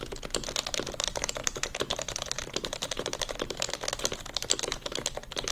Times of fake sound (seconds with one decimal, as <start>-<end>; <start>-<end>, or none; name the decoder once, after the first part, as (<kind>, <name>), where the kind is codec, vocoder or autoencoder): 1.4-3.4 (vocoder, BigVGAN v2)